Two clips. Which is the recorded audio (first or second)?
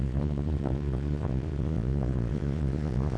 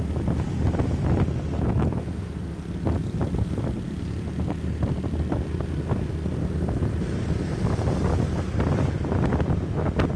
second